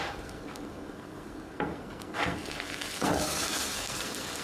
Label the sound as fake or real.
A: fake